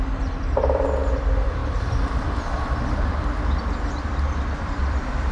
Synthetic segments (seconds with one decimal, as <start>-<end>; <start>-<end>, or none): 0.0-5.3